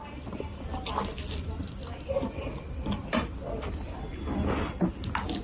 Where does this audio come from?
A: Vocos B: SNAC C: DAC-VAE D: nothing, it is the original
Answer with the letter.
D